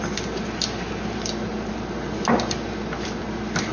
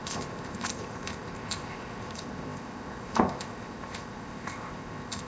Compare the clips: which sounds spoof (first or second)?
second